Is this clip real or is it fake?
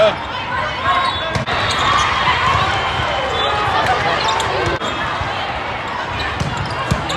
real